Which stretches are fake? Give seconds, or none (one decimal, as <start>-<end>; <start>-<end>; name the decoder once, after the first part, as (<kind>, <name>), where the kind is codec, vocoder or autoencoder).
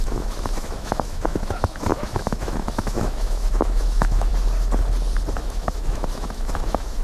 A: 0.0-4.3 (autoencoder, DAC-VAE); 5.4-7.0